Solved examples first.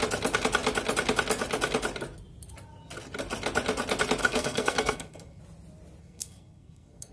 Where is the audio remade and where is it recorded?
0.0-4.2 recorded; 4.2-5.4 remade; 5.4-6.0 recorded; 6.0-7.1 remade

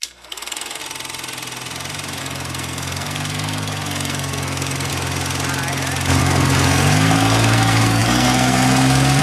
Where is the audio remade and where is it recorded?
0.0-0.8 remade; 0.8-2.2 recorded; 2.2-4.9 remade; 4.9-6.2 recorded; 6.2-9.2 remade

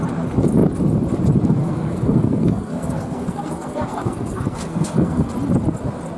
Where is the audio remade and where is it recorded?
0.0-1.6 recorded; 1.6-5.3 remade; 5.3-6.2 recorded

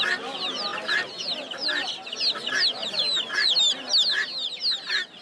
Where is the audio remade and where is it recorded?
0.0-5.2 recorded

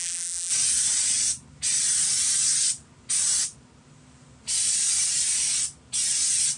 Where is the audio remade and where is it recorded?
0.0-0.5 remade; 0.5-6.6 recorded